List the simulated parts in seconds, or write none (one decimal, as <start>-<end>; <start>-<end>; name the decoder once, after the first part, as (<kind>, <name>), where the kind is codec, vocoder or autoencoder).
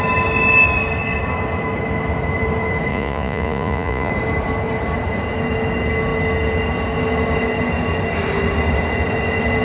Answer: 2.9-4.1 (vocoder, Vocos)